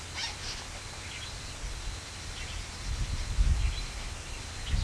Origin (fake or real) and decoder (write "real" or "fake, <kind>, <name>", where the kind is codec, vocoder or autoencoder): real